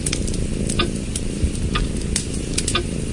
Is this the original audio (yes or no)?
yes